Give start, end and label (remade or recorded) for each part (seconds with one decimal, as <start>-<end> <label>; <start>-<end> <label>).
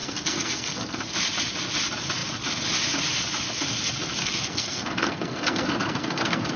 0.0-1.0 remade; 1.0-4.2 recorded; 4.2-6.6 remade